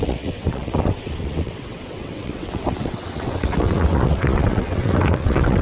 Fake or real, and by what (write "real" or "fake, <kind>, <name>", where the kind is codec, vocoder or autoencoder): fake, vocoder, WaveNeXt